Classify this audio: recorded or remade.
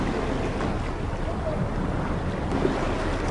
recorded